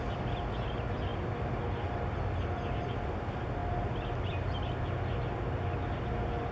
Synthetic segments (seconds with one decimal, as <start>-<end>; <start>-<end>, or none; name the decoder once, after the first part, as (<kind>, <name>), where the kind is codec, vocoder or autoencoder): none